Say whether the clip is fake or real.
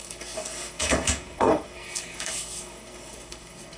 fake